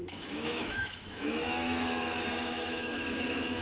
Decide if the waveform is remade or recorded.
remade